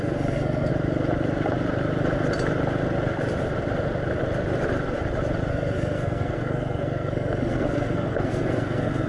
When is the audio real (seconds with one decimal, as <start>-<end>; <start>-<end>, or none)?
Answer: 0.7-5.5